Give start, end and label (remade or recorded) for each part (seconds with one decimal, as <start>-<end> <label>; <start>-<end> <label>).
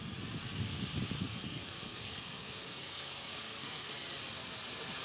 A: 0.0-1.2 recorded; 1.2-3.9 remade; 3.9-5.0 recorded